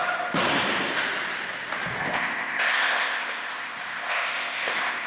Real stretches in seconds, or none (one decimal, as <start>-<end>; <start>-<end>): 0.0-2.0